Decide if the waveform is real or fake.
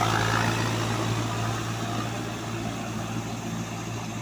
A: real